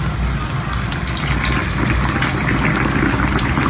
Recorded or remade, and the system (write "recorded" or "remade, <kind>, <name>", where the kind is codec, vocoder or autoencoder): recorded